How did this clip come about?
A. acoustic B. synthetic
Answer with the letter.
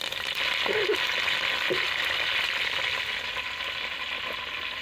A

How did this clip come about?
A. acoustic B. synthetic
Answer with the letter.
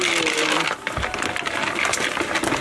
A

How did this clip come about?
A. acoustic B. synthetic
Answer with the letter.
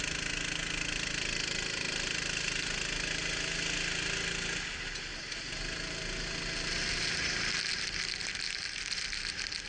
A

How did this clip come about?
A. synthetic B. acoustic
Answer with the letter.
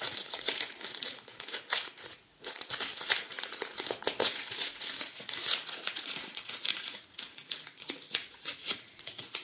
A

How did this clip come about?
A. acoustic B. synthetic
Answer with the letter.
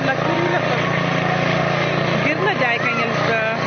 A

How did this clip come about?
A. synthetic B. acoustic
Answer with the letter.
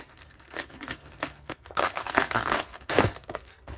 A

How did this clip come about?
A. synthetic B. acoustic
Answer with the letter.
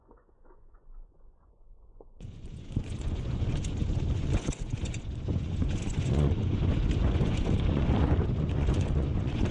A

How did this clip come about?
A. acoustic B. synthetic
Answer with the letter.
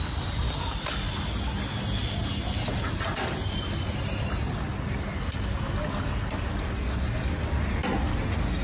A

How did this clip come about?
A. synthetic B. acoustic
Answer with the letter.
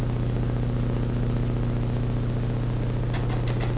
B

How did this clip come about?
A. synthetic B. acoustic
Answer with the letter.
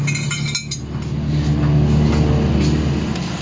B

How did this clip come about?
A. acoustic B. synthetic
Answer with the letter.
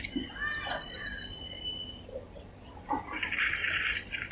A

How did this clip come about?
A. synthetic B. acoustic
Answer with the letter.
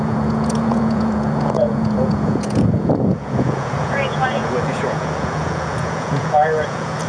A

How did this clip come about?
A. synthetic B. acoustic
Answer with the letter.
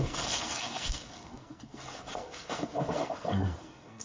A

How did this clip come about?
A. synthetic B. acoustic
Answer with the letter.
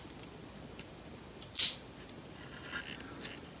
A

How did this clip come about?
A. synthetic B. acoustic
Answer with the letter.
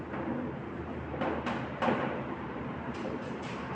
A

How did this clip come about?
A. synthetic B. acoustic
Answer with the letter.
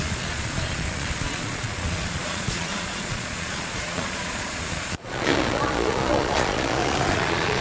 A